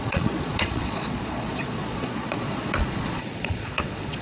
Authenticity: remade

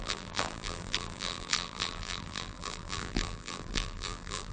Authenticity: remade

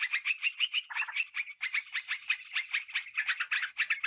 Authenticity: recorded